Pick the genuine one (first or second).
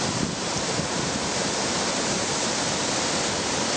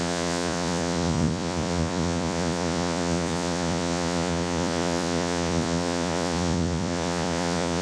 first